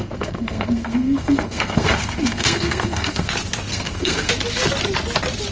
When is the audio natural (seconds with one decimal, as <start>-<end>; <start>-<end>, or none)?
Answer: 3.3-3.7; 4.3-5.5